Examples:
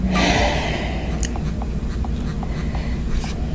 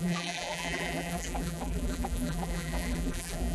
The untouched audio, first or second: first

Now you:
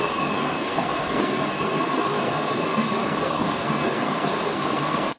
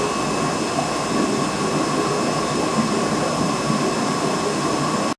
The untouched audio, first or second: second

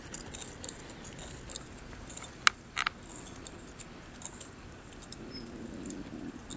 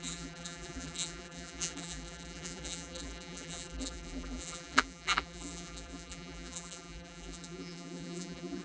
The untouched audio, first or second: first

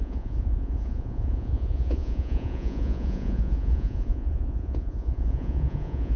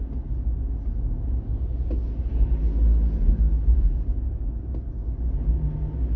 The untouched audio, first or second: second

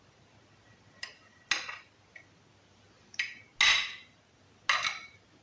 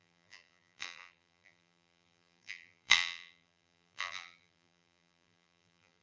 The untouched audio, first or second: first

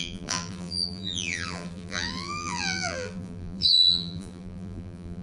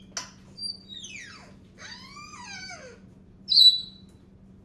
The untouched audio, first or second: second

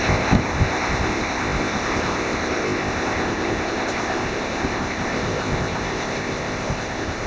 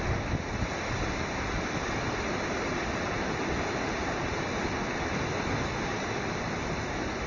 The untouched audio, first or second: second